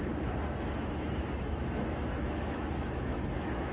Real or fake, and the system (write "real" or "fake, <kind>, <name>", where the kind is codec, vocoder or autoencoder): fake, autoencoder, DAC-VAE